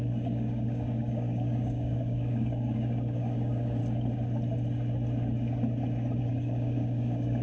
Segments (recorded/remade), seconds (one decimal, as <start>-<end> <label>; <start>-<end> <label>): 0.0-3.8 remade; 3.8-6.2 recorded; 6.2-7.4 remade